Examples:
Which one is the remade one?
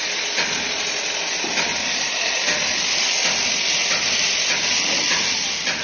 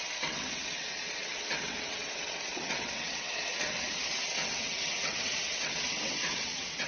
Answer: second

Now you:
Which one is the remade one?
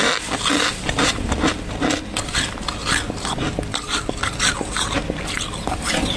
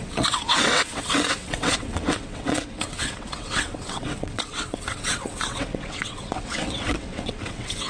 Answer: second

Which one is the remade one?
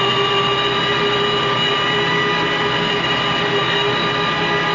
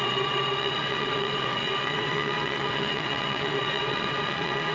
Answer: second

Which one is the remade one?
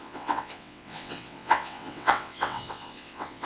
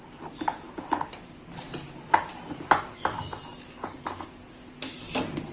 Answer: first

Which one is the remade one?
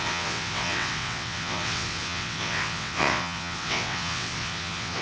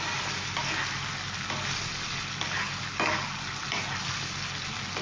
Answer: first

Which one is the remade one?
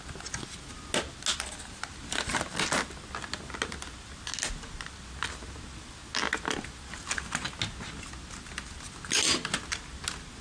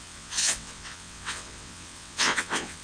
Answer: second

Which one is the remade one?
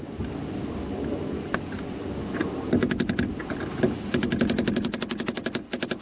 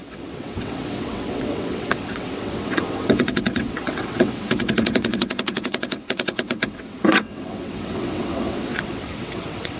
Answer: second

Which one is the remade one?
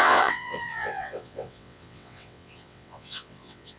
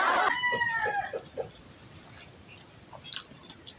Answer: first